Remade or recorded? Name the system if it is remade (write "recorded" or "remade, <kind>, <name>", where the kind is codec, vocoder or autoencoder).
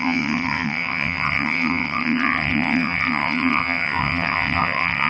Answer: remade, vocoder, WaveNeXt